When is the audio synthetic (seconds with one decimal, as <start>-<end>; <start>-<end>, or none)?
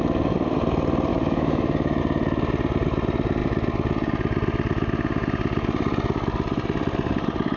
1.1-2.0